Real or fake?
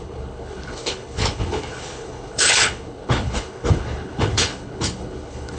fake